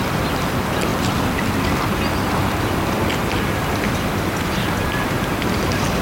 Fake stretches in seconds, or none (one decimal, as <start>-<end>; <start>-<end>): none